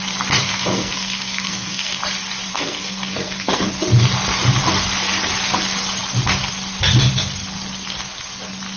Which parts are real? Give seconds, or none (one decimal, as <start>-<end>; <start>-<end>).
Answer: 0.0-0.4; 2.0-2.5; 3.7-8.8